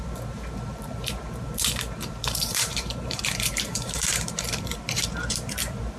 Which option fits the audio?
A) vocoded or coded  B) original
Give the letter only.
A